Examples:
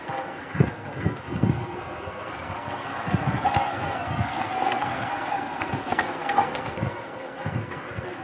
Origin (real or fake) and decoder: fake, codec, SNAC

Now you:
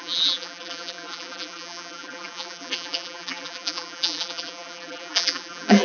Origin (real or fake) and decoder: fake, vocoder, BigVGAN v2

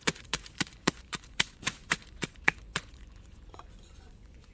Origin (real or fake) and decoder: fake, vocoder, Vocos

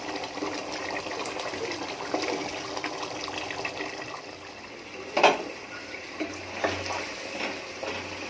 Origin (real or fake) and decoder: real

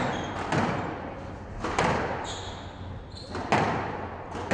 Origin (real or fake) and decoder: real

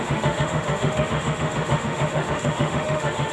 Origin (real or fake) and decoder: fake, autoencoder, DAC-VAE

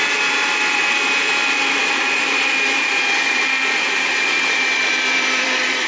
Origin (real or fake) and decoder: fake, vocoder, BigVGAN v2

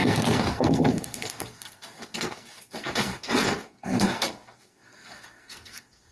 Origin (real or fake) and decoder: fake, codec, SNAC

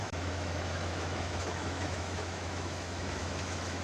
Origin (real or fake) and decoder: fake, autoencoder, DAC-VAE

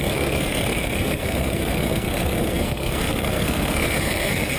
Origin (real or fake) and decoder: fake, codec, SNAC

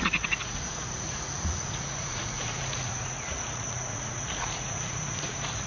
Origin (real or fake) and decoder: fake, vocoder, Vocos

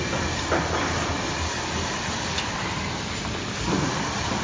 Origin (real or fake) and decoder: real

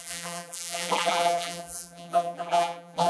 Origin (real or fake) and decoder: fake, vocoder, BigVGAN v2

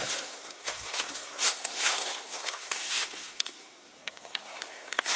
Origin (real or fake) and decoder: fake, codec, SNAC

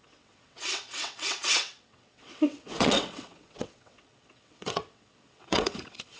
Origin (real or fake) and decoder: fake, vocoder, WaveNeXt